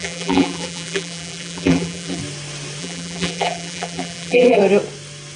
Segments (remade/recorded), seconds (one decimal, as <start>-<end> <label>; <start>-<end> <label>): 0.0-2.2 remade; 2.2-2.8 recorded; 2.8-4.6 remade; 4.6-5.4 recorded